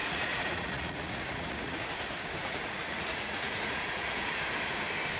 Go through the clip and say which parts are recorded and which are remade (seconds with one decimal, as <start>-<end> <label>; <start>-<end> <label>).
0.0-1.8 remade; 1.8-2.4 recorded; 2.4-4.3 remade; 4.3-5.2 recorded